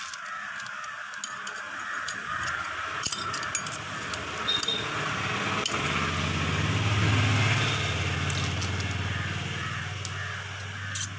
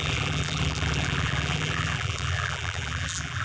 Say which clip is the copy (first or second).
second